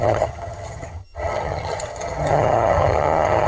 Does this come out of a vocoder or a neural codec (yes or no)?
yes